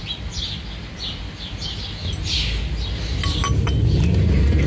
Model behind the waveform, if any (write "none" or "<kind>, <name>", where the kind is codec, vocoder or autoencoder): none